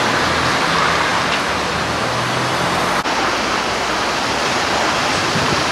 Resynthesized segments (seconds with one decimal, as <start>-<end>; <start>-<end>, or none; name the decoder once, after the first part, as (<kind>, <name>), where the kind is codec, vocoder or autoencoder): none